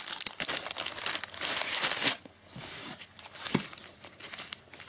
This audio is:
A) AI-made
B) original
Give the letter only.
B